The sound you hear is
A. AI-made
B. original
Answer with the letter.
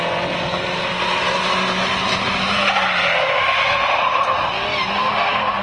B